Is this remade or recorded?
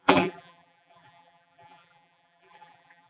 remade